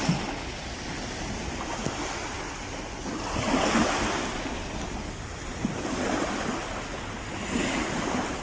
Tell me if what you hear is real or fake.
real